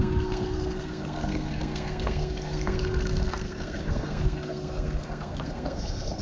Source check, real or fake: fake